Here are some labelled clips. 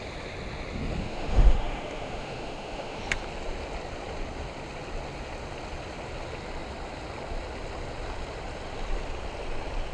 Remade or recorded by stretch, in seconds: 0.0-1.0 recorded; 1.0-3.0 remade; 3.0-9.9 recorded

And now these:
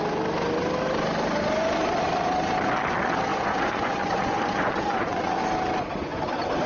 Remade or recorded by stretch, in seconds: 0.0-3.3 recorded; 3.3-5.4 remade; 5.4-6.7 recorded

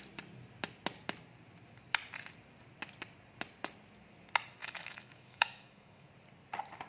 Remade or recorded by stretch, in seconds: 0.0-4.6 recorded; 4.6-6.1 remade; 6.1-6.9 recorded

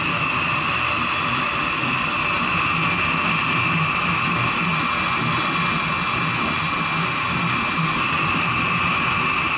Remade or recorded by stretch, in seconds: 0.0-9.6 recorded

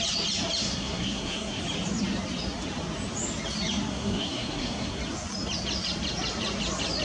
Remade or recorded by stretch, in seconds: 0.0-0.6 recorded; 0.6-1.6 remade; 1.6-3.9 recorded; 3.9-5.0 remade; 5.0-7.0 recorded

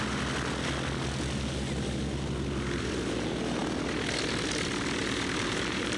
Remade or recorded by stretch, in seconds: 0.0-5.0 recorded; 5.0-6.0 remade